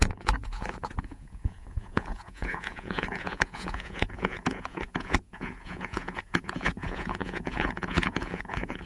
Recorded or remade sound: remade